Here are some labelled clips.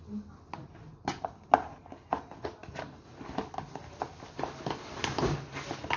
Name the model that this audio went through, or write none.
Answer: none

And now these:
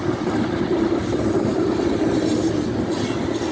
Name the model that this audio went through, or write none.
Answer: none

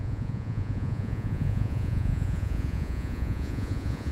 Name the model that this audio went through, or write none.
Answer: vocoder, Vocos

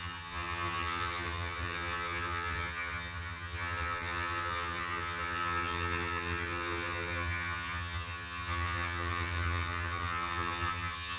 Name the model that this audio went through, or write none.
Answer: vocoder, HiFi-GAN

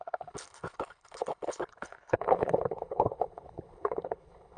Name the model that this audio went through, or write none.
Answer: codec, HILCodec